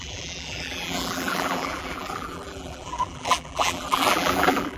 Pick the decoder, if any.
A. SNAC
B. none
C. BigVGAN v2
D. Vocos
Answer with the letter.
C